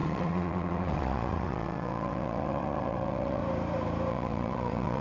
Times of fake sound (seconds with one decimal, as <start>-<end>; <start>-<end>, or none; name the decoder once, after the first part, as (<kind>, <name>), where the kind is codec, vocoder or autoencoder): 0.0-3.4 (vocoder, WaveNeXt); 4.1-5.0